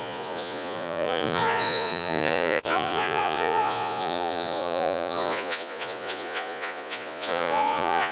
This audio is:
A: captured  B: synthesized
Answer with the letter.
B